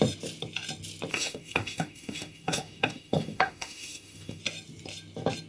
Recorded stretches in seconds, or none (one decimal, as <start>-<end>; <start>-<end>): 0.0-1.1; 4.4-5.5